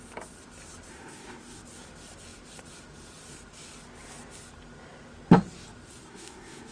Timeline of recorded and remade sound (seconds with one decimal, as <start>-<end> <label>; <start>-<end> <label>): 0.0-0.9 recorded; 0.9-1.6 remade; 1.6-6.0 recorded; 6.0-6.7 remade